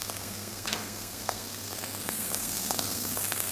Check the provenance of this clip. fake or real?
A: fake